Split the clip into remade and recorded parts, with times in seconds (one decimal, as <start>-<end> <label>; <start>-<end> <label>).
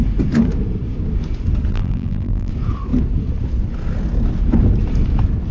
0.0-1.7 recorded; 1.7-2.5 remade; 2.5-5.5 recorded